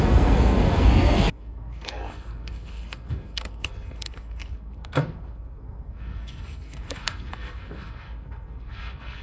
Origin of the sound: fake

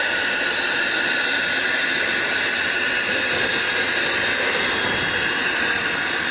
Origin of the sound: real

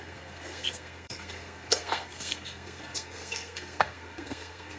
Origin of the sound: fake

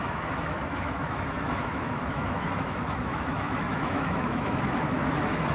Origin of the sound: fake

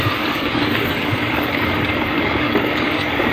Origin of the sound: fake